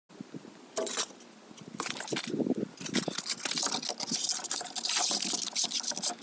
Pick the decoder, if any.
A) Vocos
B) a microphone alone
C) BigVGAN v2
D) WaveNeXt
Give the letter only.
B